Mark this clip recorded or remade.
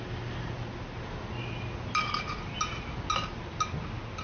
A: recorded